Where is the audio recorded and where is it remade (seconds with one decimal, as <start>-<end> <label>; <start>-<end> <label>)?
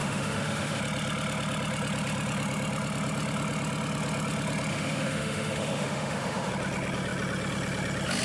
0.0-0.8 remade; 0.8-4.7 recorded; 4.7-6.5 remade; 6.5-8.2 recorded